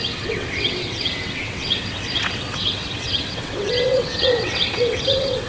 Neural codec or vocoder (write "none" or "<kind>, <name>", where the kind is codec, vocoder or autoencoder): vocoder, WaveNeXt